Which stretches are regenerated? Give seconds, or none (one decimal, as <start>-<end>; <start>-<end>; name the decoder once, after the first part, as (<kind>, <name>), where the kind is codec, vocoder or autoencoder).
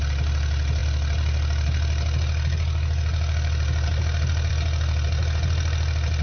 none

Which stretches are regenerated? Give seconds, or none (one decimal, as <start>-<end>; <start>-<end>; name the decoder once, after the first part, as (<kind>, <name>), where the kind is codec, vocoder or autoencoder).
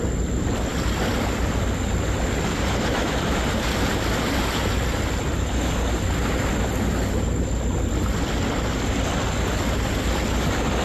none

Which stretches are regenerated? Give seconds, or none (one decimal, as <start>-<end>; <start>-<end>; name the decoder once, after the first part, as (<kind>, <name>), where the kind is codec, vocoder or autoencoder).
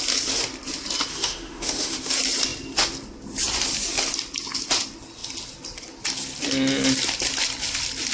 1.1-2.1 (autoencoder, DAC-VAE)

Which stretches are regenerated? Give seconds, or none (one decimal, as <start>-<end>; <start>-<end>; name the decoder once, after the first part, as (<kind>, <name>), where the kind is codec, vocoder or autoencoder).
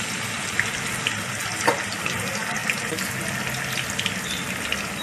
none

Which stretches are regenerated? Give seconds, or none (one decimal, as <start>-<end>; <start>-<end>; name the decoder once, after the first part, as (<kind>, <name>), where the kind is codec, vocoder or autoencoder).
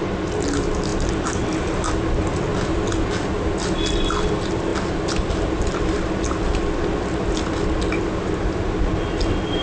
none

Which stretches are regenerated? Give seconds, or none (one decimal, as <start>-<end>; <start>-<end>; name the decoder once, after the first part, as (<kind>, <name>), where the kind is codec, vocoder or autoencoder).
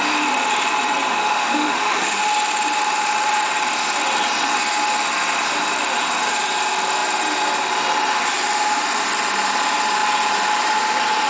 1.1-2.1 (autoencoder, DAC-VAE)